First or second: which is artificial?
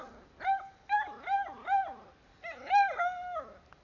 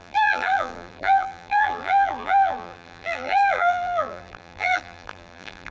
second